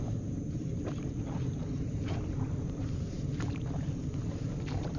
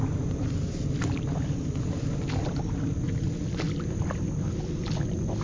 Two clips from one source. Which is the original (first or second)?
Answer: second